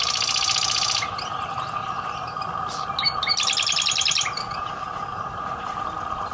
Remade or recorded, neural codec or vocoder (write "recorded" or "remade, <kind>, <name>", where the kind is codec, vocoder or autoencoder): recorded